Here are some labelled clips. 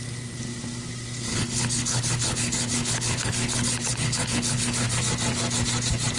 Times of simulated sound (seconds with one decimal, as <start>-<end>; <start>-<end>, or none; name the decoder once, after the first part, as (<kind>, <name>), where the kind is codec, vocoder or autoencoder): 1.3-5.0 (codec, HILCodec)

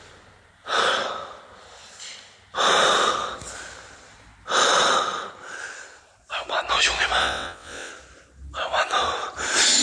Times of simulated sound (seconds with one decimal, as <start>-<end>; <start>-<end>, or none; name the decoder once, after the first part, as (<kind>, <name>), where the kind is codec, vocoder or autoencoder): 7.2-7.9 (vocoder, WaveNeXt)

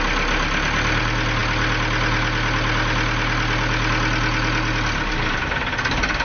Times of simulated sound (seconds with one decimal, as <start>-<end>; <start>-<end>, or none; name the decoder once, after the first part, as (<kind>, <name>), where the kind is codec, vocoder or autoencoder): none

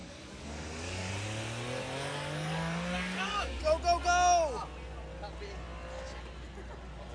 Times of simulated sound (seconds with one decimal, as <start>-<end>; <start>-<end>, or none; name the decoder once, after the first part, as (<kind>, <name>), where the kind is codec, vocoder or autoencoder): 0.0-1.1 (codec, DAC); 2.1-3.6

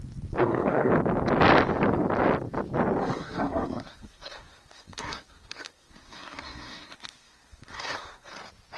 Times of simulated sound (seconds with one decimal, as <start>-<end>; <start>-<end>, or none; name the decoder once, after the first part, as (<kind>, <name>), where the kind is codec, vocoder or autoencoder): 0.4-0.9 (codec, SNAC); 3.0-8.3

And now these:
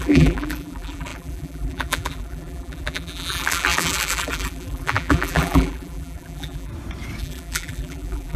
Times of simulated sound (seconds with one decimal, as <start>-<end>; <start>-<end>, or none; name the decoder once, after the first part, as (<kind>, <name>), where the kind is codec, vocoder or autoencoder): 0.0-6.7 (vocoder, BigVGAN v2); 7.2-8.4

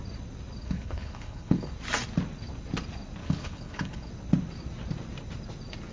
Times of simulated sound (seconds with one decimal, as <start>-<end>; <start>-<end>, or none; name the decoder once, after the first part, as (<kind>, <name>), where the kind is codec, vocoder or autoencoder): 0.6-1.7 (codec, HILCodec); 3.2-4.1

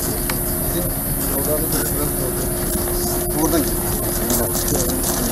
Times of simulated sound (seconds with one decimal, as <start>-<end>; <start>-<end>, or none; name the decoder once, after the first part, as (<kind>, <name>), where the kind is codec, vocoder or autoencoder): none